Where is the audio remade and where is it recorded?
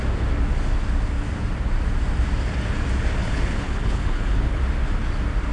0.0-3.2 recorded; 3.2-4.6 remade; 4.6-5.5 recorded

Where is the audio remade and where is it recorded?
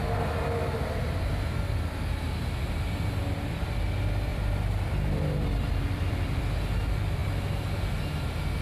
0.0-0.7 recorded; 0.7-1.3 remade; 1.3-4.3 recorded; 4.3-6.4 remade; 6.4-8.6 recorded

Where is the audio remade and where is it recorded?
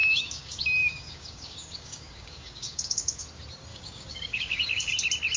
0.0-3.2 remade; 3.2-3.7 recorded; 3.7-4.9 remade; 4.9-5.4 recorded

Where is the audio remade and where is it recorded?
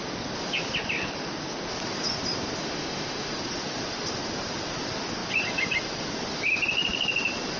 0.0-2.6 recorded; 2.6-3.3 remade; 3.3-7.6 recorded